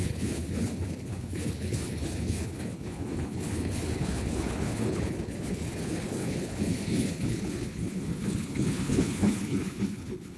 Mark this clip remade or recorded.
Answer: remade